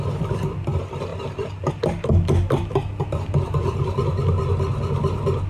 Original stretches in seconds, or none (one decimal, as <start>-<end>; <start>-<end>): 0.0-1.1; 1.7-5.5